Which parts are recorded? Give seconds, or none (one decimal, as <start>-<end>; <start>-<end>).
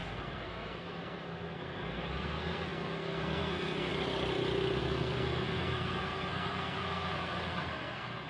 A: 3.9-4.8